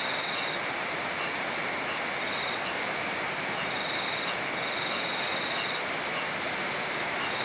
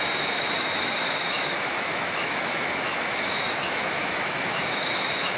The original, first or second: first